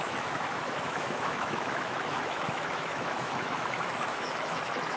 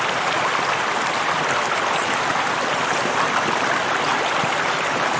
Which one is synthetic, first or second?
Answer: first